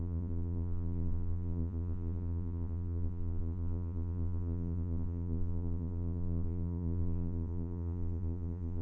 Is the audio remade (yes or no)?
yes